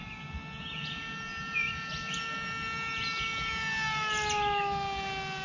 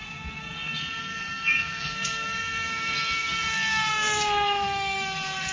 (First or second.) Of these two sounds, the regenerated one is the second